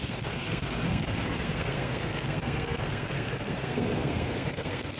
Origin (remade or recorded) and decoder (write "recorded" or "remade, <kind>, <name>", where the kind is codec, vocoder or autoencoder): remade, codec, SNAC